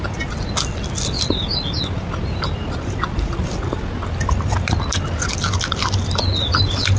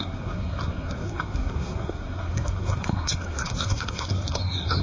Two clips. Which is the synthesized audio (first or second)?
second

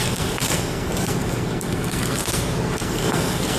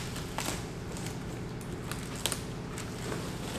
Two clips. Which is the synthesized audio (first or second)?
first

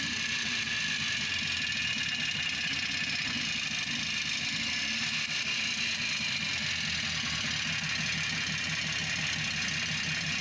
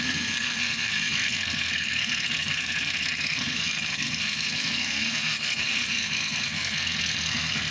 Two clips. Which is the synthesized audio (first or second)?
second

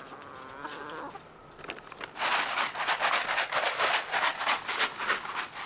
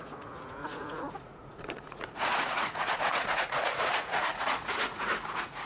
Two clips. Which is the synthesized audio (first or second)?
second